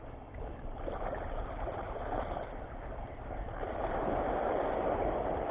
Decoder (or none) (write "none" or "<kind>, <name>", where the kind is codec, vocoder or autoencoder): vocoder, BigVGAN v2